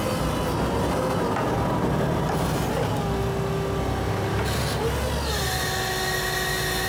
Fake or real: real